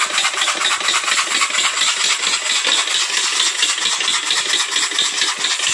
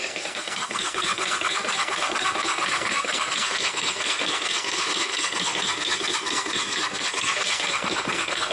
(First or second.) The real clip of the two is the first